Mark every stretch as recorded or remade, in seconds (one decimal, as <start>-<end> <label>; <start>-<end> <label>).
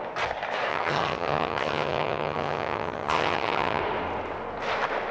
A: 0.0-0.7 recorded; 0.7-3.8 remade; 3.8-5.1 recorded